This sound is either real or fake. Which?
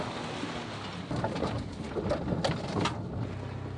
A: real